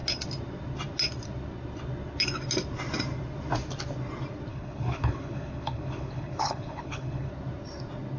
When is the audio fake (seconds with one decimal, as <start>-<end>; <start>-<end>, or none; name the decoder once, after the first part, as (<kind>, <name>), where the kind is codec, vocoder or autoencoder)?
4.5-7.3 (codec, HILCodec)